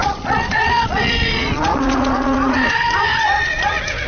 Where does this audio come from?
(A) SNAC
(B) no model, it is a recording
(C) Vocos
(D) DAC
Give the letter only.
C